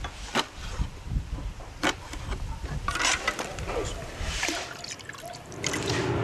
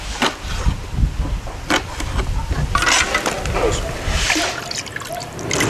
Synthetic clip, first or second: first